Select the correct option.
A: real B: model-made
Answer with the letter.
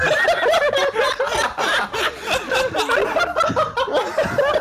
A